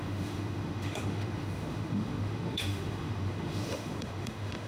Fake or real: fake